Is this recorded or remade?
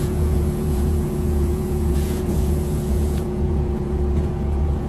remade